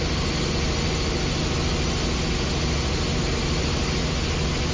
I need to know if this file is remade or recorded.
recorded